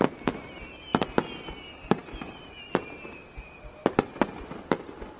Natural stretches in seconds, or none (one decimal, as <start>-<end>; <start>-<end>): 0.0-0.9; 1.5-2.0